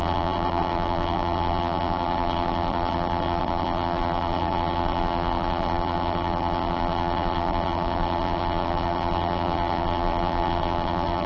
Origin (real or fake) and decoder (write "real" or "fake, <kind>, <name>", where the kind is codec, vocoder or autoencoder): fake, vocoder, BigVGAN v2